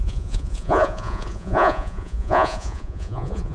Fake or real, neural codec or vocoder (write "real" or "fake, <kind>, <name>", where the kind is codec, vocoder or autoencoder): fake, vocoder, Vocos